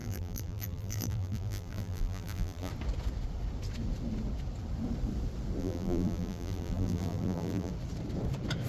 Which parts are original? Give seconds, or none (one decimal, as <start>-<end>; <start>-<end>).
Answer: 2.7-5.6; 7.7-8.7

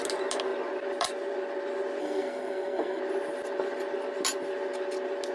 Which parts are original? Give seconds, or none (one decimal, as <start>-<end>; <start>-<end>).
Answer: 0.0-2.0; 3.0-5.3

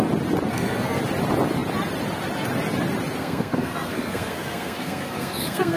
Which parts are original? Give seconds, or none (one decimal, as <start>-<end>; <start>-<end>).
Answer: 0.0-0.5; 1.0-3.2

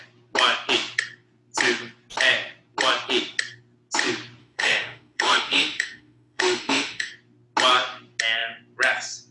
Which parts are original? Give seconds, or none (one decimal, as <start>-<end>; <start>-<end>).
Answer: 0.0-4.4; 7.1-9.3

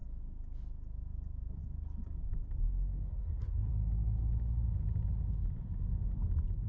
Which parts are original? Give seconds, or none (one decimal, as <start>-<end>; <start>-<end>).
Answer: 0.0-3.1; 3.7-6.7

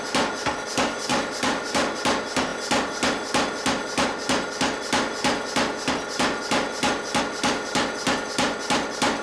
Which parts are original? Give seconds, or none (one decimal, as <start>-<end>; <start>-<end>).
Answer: 0.0-1.1; 2.0-9.2

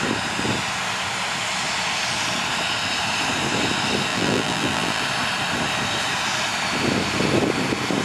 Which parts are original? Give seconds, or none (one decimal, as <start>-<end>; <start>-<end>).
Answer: 0.0-4.1; 5.0-8.0

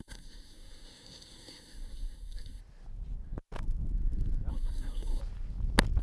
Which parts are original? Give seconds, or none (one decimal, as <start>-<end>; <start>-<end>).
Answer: 2.6-4.5; 5.2-6.0